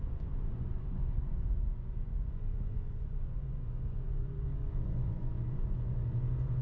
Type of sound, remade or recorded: remade